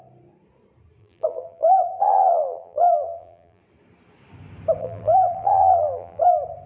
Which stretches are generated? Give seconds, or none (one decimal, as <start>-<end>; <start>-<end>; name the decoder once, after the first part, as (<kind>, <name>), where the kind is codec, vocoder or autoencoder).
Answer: 1.0-3.6 (vocoder, BigVGAN v2); 4.8-6.2